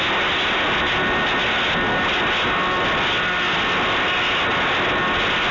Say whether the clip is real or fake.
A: real